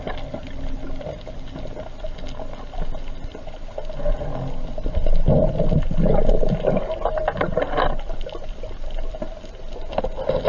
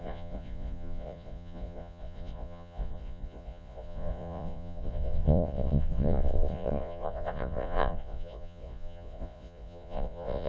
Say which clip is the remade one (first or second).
second